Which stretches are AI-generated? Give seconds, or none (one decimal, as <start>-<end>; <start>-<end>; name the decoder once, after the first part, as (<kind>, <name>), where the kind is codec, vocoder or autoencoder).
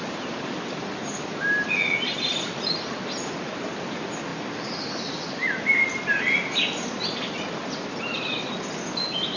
none